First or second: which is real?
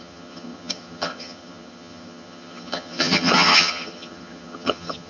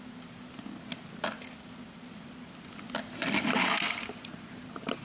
second